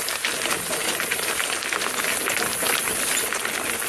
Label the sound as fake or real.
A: real